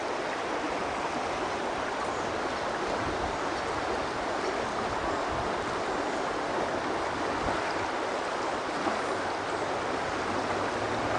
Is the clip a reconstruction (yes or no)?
no